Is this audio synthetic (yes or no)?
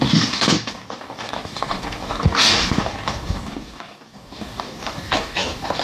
yes